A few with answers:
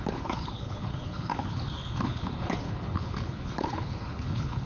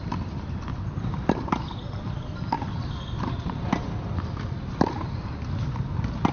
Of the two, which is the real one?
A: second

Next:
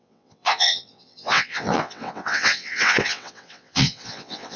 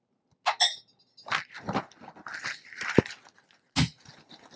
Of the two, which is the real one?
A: second